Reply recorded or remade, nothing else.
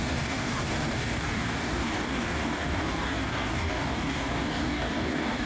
remade